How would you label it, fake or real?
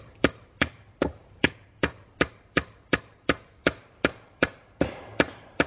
fake